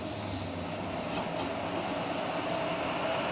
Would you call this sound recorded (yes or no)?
yes